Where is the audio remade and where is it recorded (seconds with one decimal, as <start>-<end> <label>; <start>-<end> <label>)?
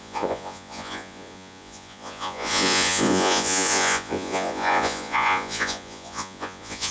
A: 0.0-6.9 remade